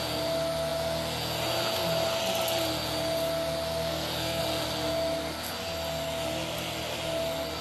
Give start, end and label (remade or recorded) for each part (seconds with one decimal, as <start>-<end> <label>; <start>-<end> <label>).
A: 0.0-3.7 recorded; 3.7-4.4 remade; 4.4-7.6 recorded